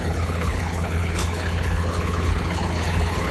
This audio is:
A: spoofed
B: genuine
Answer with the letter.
A